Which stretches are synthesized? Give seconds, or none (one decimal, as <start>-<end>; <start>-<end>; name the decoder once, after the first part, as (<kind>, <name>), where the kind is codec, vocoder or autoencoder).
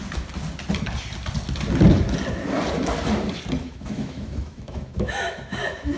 3.6-6.0 (autoencoder, DAC-VAE)